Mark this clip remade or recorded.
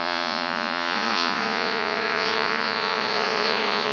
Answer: remade